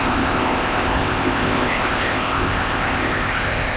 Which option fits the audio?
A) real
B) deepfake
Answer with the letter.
B